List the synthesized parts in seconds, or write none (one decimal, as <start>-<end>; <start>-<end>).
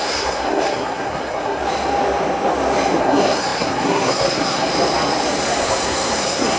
0.0-1.6; 3.0-4.7; 5.7-6.6